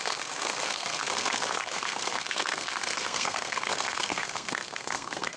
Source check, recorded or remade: remade